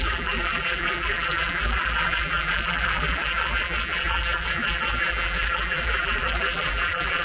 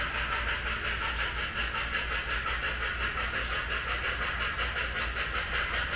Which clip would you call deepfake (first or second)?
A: first